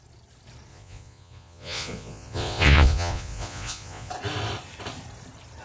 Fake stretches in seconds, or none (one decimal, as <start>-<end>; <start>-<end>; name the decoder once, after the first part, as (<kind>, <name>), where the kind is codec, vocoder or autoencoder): 0.7-4.1 (vocoder, Vocos)